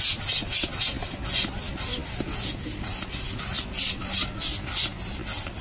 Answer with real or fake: real